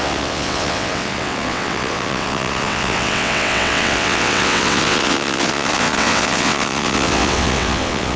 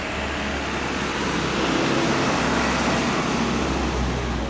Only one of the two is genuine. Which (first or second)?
second